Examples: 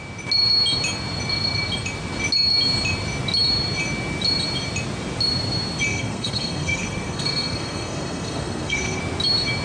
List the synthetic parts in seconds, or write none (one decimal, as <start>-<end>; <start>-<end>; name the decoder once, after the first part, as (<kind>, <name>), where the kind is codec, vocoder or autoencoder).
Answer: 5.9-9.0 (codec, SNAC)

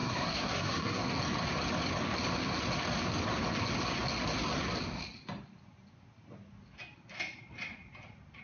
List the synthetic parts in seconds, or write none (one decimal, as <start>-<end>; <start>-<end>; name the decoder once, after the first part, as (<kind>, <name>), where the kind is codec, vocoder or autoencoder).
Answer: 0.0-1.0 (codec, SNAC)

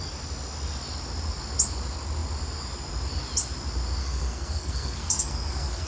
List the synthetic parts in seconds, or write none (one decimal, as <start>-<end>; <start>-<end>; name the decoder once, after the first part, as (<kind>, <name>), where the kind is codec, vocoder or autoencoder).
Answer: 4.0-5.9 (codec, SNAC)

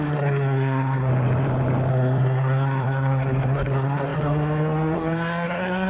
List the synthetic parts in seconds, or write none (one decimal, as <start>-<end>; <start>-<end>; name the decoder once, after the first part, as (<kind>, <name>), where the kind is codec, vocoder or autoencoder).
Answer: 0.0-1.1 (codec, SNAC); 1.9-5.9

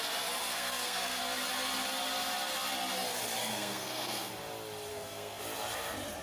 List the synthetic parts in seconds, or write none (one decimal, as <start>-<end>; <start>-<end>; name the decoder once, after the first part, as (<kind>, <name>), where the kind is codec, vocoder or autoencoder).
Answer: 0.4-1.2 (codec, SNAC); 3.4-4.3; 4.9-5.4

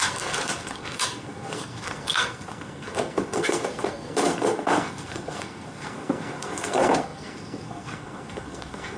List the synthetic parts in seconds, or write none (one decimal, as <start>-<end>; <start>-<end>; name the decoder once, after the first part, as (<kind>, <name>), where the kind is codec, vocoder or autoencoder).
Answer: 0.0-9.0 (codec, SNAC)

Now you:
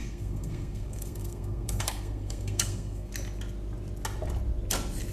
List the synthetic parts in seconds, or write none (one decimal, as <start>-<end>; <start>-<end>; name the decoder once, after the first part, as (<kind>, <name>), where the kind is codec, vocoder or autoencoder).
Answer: 0.0-3.1 (codec, SNAC)

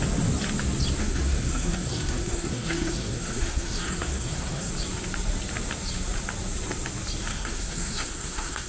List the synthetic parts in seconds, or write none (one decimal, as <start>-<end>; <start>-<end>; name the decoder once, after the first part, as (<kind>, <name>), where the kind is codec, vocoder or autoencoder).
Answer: 1.0-4.7 (codec, SNAC); 7.3-8.7